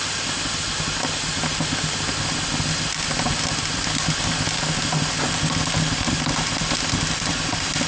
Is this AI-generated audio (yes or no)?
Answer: no